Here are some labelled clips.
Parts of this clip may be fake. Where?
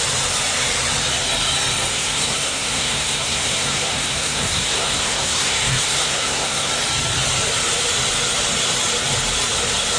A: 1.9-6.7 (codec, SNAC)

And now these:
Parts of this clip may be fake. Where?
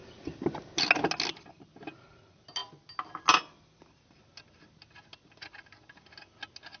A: none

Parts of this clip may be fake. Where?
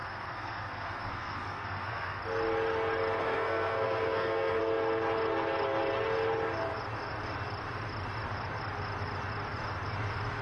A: 0.0-2.2 (codec, SNAC); 3.2-4.6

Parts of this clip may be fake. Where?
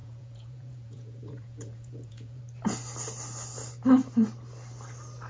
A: 0.0-2.4 (vocoder, Vocos)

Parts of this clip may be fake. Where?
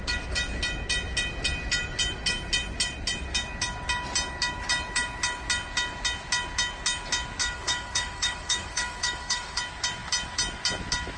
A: 7.4-9.6 (autoencoder, DAC-VAE)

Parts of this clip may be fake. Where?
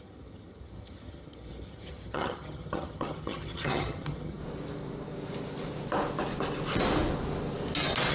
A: 0.0-4.4 (vocoder, HiFi-GAN)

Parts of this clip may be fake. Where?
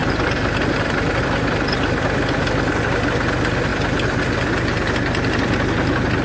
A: 0.0-2.9 (vocoder, BigVGAN v2); 3.7-4.5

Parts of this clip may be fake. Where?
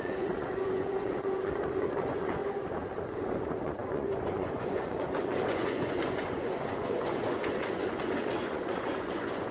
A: 0.0-9.5 (vocoder, Vocos)